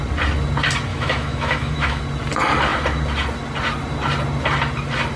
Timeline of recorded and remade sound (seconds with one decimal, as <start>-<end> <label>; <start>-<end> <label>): 0.0-0.9 recorded; 0.9-2.0 remade; 2.0-5.2 recorded